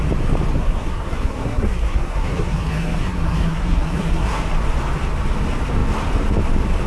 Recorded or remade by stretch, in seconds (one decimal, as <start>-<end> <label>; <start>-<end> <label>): 0.0-0.6 recorded; 0.6-4.4 remade; 4.4-6.9 recorded